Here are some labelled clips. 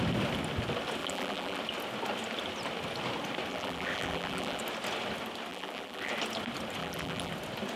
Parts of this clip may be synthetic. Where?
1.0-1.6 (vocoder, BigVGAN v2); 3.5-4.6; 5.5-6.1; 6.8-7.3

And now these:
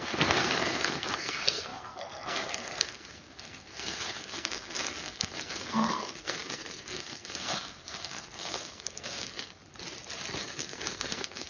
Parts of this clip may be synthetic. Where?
0.0-9.6 (codec, SNAC); 10.4-11.5

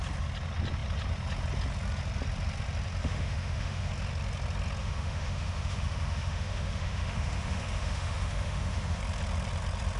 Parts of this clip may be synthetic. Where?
3.0-3.9 (autoencoder, DAC-VAE); 4.8-9.0

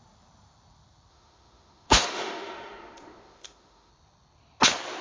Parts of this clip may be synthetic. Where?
1.1-3.9 (autoencoder, DAC-VAE)

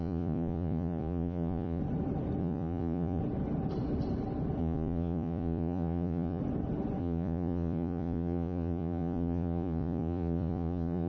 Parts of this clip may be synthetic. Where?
0.0-1.8 (vocoder, Vocos); 2.4-3.2; 4.6-6.4; 7.0-11.1

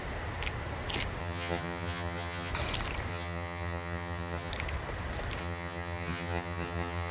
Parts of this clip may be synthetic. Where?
1.2-2.5 (vocoder, HiFi-GAN); 3.1-4.5; 5.4-7.1